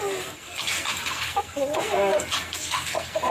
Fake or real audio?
fake